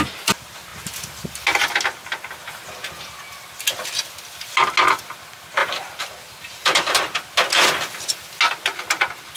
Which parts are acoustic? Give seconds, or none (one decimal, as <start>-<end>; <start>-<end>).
0.0-5.6; 7.1-9.4